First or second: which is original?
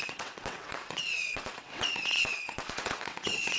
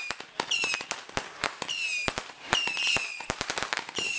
second